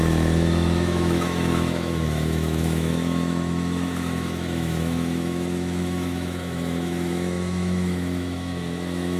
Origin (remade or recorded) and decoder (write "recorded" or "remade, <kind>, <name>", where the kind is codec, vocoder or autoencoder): remade, autoencoder, DAC-VAE